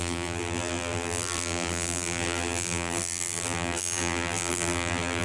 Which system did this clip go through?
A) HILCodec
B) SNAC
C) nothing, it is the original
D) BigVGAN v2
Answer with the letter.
D